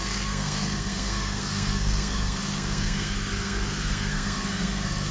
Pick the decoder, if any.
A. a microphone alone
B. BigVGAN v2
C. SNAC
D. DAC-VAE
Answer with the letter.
C